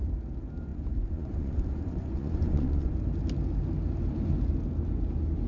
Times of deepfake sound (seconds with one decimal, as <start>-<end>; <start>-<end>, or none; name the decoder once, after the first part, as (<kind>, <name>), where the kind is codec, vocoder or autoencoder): 0.7-2.9 (vocoder, Vocos)